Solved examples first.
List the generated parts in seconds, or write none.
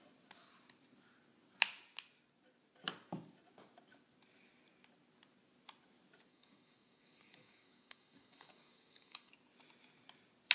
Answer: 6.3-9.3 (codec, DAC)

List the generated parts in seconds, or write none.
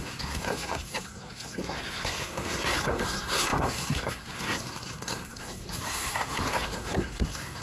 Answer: 0.0-7.6 (codec, SNAC)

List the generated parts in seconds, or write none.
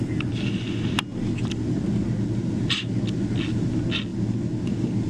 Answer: none